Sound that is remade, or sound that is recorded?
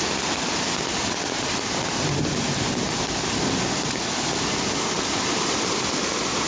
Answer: recorded